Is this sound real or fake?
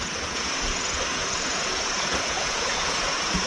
fake